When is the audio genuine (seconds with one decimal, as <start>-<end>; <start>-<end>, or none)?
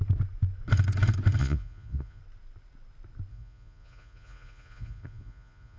0.0-1.4; 2.2-3.3